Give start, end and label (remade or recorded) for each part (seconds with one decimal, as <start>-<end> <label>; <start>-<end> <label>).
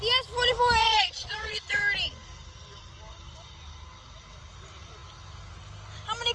0.0-0.8 recorded; 0.8-1.8 remade; 1.8-6.3 recorded